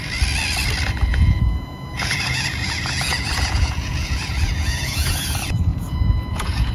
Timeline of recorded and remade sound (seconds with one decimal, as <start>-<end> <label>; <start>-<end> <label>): 0.0-1.1 recorded; 1.1-5.1 remade; 5.1-5.7 recorded; 5.7-6.7 remade